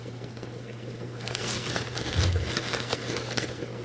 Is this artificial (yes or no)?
yes